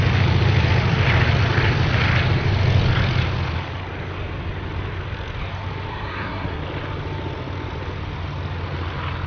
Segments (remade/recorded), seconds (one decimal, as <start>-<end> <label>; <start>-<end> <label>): 0.0-5.9 recorded; 5.9-6.6 remade; 6.6-9.3 recorded